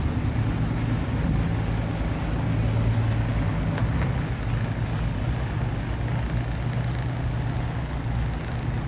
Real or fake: real